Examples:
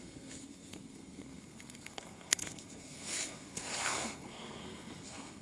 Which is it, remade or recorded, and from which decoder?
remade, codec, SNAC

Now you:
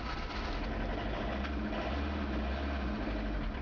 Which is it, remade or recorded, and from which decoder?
recorded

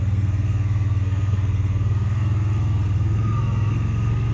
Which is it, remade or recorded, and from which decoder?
remade, codec, SNAC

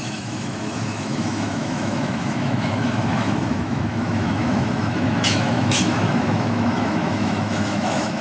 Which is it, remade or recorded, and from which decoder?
remade, autoencoder, DAC-VAE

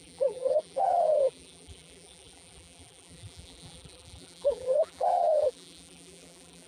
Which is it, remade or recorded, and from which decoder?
remade, vocoder, BigVGAN v2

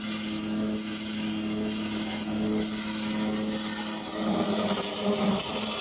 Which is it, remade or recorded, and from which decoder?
recorded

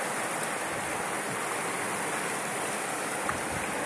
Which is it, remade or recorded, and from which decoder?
recorded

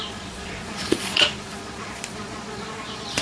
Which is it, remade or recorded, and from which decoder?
remade, vocoder, Vocos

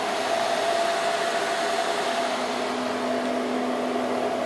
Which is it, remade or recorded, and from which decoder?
recorded